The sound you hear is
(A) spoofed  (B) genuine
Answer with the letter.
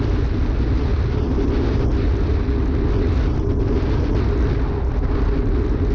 B